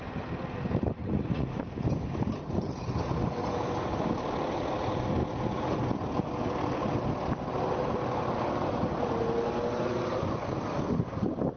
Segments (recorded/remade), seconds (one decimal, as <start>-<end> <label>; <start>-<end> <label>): 0.0-1.0 recorded; 1.0-1.6 remade; 1.6-11.6 recorded